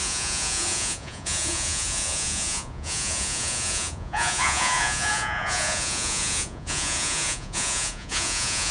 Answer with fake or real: fake